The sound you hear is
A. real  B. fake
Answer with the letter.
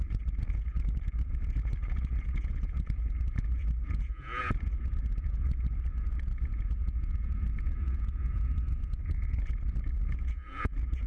B